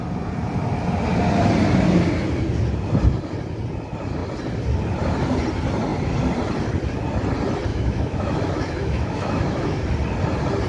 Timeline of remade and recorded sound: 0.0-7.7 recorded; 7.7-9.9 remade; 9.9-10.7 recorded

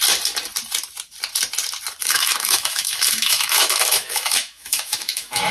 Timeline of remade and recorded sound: 0.0-2.0 recorded; 2.0-5.5 remade

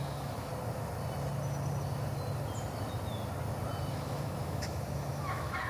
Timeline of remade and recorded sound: 0.0-0.5 remade; 0.5-3.9 recorded; 3.9-5.7 remade